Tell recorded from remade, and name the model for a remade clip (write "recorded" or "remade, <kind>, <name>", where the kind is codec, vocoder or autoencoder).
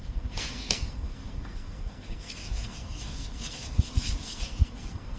remade, codec, SNAC